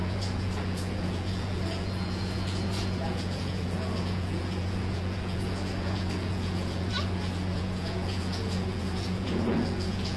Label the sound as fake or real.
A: fake